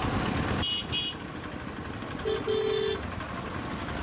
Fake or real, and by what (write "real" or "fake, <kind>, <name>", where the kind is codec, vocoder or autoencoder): real